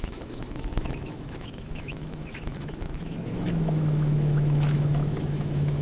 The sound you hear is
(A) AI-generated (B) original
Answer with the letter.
A